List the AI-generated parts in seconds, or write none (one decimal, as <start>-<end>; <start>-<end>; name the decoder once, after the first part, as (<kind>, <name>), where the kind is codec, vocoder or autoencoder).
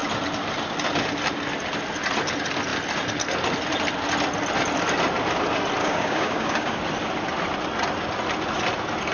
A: 5.8-6.8 (codec, DAC)